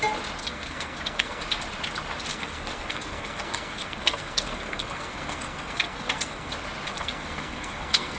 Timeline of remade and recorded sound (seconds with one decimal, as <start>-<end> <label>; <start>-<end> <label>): 0.0-0.4 recorded; 0.4-1.4 remade; 1.4-2.3 recorded; 2.3-6.5 remade; 6.5-6.9 recorded; 6.9-8.2 remade